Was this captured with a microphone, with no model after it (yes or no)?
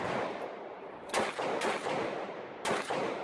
yes